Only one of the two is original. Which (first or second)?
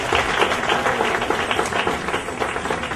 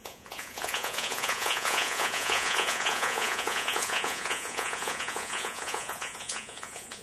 first